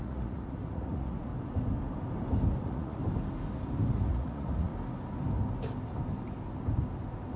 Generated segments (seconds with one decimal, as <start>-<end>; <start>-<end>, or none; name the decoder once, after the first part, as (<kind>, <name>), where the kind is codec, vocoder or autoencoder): 0.0-1.3 (vocoder, Vocos); 2.6-3.0; 3.9-4.7

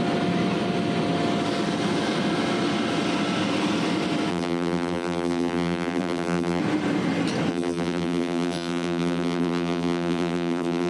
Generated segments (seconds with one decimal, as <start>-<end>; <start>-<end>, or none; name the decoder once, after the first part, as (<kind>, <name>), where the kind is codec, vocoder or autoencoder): 4.3-6.6 (vocoder, BigVGAN v2); 7.5-10.9

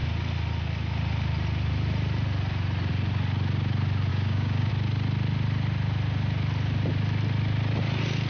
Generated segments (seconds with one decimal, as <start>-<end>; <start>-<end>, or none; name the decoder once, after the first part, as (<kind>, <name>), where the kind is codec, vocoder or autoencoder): 4.1-4.7 (codec, DAC)

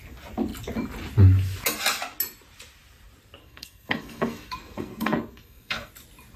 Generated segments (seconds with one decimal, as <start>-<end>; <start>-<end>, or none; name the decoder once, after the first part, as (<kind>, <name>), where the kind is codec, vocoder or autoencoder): 3.4-5.9 (codec, SNAC)

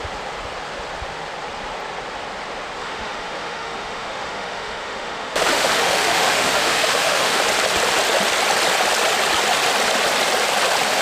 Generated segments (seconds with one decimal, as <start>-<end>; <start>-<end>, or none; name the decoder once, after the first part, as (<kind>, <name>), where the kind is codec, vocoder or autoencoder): 2.8-7.4 (autoencoder, DAC-VAE)

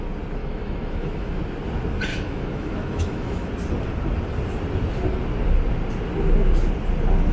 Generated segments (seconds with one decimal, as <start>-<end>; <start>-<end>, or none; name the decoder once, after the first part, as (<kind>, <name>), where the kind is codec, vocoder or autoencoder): 0.4-1.4 (autoencoder, DAC-VAE); 2.1-3.5

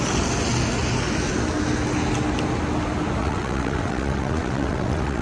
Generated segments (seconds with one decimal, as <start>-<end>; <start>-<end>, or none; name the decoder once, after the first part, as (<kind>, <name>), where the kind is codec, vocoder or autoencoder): 3.2-5.2 (vocoder, WaveNeXt)